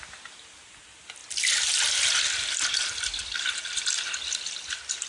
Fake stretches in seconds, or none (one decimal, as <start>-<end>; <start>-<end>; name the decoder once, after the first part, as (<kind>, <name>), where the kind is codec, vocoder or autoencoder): none